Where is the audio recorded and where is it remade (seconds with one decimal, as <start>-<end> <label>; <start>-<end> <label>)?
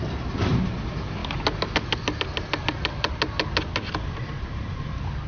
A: 0.0-1.2 remade; 1.2-4.4 recorded; 4.4-5.3 remade